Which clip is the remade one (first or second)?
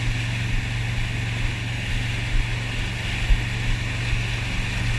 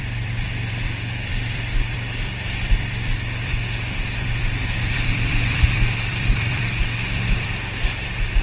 second